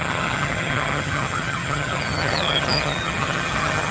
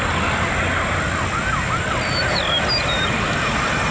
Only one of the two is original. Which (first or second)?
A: second